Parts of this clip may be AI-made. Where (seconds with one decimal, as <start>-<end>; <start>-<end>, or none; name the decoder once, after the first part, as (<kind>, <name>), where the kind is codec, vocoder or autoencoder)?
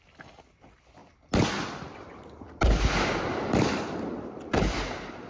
none